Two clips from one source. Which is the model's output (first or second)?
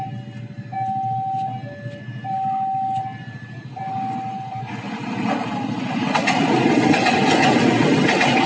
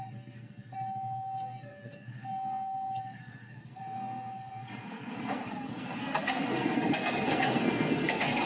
second